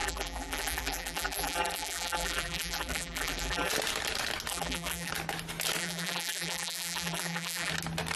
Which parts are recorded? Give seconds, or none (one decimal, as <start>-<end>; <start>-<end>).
3.7-4.5; 5.1-5.8; 7.7-8.2